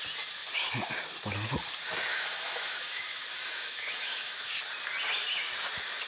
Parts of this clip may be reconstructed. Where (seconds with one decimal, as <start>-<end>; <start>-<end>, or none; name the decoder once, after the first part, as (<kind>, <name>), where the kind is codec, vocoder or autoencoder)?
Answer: 2.1-4.4 (autoencoder, DAC-VAE)